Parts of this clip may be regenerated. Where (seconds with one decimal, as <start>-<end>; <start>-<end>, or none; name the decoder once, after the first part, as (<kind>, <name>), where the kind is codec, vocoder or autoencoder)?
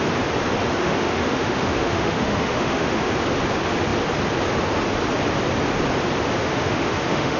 0.8-3.1 (autoencoder, DAC-VAE); 6.4-7.4